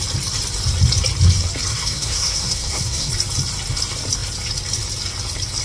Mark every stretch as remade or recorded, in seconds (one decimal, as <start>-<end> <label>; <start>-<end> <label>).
0.0-1.7 recorded; 1.7-3.1 remade; 3.1-5.6 recorded

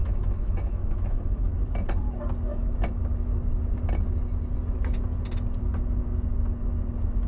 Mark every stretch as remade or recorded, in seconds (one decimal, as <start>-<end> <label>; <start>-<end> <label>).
0.0-1.5 remade; 1.5-2.5 recorded; 2.5-3.0 remade; 3.0-7.3 recorded

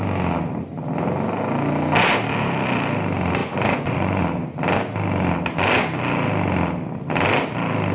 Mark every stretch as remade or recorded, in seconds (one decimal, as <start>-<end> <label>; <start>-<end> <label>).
0.0-3.4 recorded; 3.4-4.2 remade; 4.2-7.9 recorded

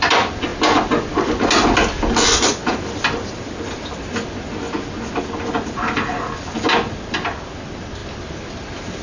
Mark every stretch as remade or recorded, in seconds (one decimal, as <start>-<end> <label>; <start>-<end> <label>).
0.0-9.0 recorded

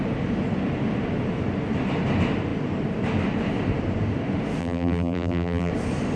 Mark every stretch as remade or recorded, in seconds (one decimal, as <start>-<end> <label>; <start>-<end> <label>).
0.0-4.6 recorded; 4.6-5.7 remade; 5.7-6.2 recorded

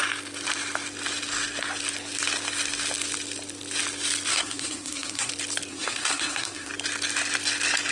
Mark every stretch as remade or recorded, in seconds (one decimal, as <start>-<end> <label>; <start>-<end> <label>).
0.0-4.3 recorded; 4.3-5.3 remade; 5.3-5.7 recorded; 5.7-6.7 remade; 6.7-7.9 recorded